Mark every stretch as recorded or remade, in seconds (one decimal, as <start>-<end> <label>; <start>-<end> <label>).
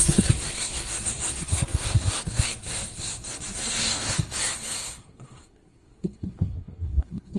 0.0-7.4 remade